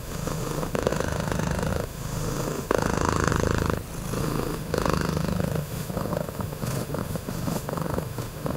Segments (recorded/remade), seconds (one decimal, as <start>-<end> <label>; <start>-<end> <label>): 0.0-3.3 remade; 3.3-4.2 recorded; 4.2-8.6 remade